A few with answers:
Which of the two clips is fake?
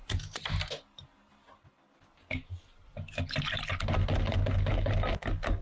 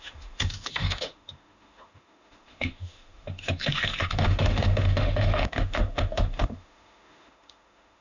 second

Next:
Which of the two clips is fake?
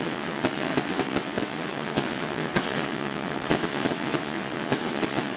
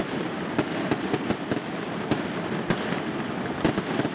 first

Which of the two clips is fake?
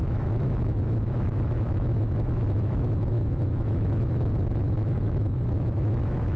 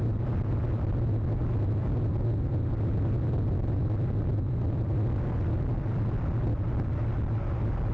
first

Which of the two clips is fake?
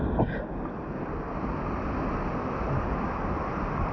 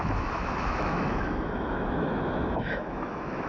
second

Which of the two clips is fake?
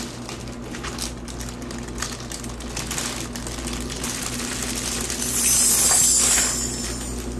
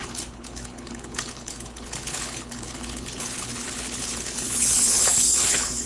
second